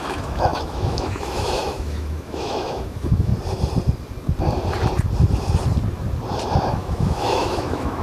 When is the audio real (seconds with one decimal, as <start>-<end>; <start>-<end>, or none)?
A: 3.3-6.7